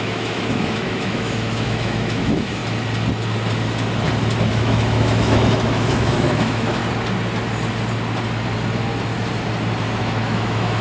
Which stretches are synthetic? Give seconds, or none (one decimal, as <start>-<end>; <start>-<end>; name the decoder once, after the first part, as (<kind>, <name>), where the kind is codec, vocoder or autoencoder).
0.0-2.6 (autoencoder, DAC-VAE); 4.5-6.8; 10.0-10.8